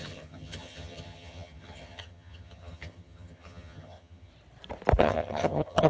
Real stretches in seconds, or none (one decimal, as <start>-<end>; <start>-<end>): 4.3-5.0